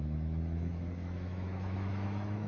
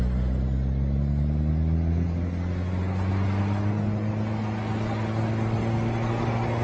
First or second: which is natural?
second